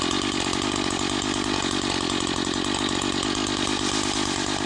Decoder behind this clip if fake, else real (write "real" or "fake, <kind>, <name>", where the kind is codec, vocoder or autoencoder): real